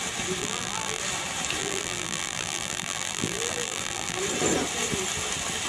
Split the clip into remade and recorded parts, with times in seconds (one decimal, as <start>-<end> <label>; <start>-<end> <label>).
0.0-0.4 recorded; 0.4-1.0 remade; 1.0-1.6 recorded; 1.6-4.2 remade; 4.2-5.7 recorded